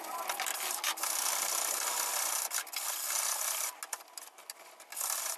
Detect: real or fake real